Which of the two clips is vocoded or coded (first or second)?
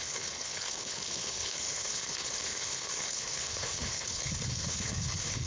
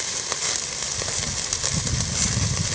first